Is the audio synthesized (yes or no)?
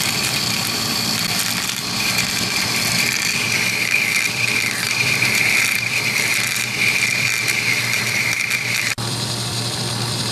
yes